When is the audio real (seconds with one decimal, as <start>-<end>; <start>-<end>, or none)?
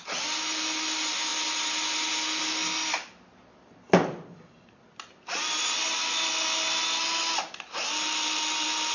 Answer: 0.0-8.9